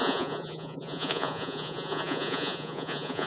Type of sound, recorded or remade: remade